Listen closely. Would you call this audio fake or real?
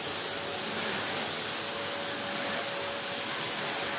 real